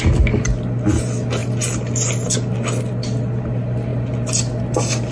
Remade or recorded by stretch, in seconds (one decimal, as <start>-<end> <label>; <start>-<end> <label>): 0.0-5.1 recorded